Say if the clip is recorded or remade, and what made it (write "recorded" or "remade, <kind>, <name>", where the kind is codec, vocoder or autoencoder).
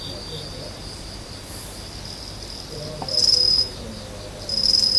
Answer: recorded